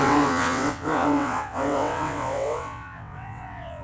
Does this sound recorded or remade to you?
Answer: remade